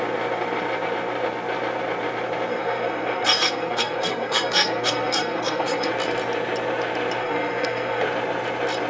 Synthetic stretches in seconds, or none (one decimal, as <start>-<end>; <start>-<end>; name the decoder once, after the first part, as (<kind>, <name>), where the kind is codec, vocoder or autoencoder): 2.5-5.9 (codec, SNAC); 7.2-8.0